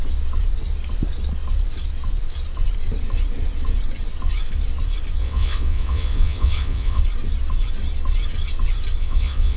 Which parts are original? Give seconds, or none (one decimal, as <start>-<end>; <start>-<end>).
0.0-5.2; 7.0-9.0